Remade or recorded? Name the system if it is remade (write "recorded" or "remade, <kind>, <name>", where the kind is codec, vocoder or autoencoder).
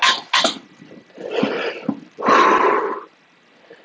recorded